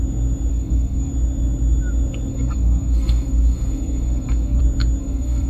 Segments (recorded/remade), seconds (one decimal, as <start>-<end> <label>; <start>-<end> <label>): 0.0-0.5 recorded; 0.5-1.1 remade; 1.1-2.3 recorded; 2.3-4.6 remade; 4.6-5.0 recorded; 5.0-5.5 remade